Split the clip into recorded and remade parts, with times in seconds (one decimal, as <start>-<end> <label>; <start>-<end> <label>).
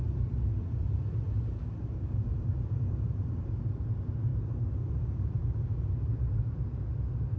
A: 0.0-0.6 recorded; 0.6-3.9 remade; 3.9-5.4 recorded; 5.4-6.4 remade; 6.4-7.4 recorded